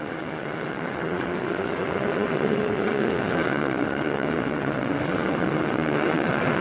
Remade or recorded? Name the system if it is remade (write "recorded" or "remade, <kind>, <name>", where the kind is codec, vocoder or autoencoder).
remade, vocoder, WaveNeXt